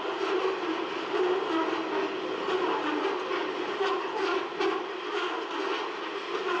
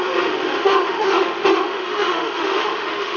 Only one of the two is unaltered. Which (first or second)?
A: first